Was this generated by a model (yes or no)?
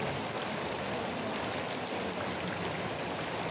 no